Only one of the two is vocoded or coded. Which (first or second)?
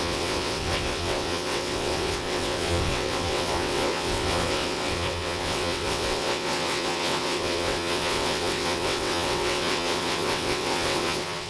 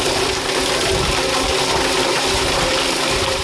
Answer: first